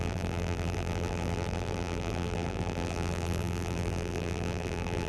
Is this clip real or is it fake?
fake